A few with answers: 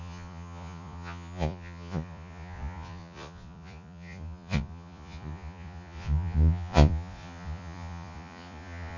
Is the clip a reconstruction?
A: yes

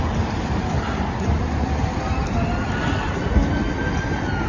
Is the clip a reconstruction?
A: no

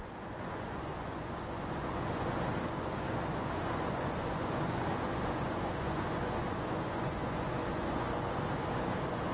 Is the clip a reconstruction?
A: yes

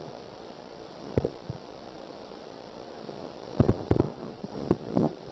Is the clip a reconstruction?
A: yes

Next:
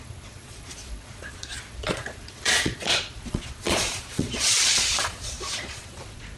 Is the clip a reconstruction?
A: yes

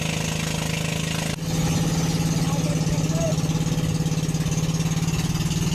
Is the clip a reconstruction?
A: no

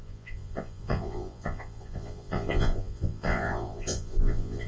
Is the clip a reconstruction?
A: yes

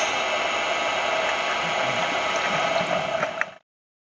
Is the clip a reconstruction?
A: no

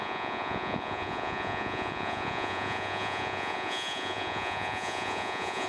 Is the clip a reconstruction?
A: yes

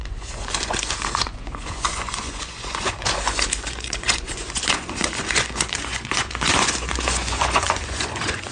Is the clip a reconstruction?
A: yes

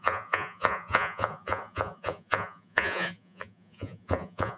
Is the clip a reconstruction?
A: yes